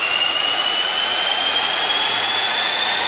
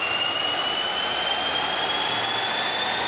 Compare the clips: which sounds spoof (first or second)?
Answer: first